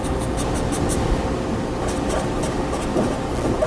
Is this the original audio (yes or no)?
yes